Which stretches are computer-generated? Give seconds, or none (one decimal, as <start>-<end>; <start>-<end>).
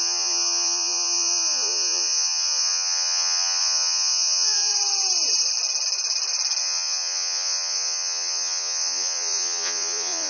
0.0-4.7; 6.6-10.3